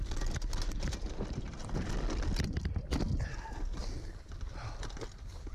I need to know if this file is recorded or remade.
recorded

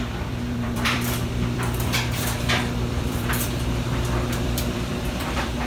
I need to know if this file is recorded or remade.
remade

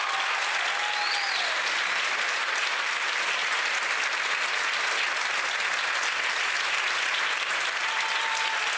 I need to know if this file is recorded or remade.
recorded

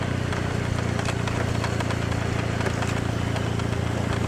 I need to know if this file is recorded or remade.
recorded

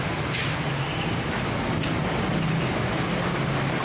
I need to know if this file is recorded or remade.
recorded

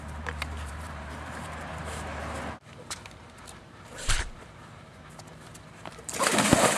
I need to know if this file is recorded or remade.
remade